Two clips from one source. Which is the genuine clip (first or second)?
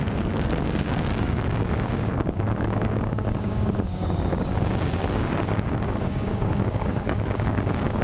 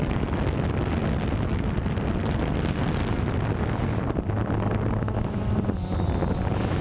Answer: second